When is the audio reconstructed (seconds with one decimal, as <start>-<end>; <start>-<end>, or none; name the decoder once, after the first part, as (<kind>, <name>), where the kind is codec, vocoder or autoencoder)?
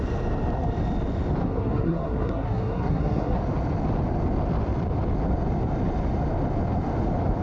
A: 1.4-3.4 (codec, SNAC)